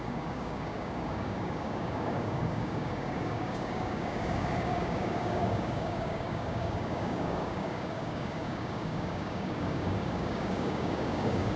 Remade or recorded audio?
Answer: remade